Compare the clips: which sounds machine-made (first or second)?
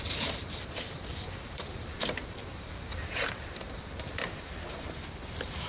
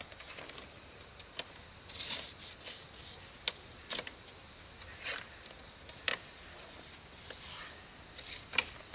first